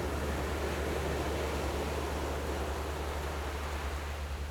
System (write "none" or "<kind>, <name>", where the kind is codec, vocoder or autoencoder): none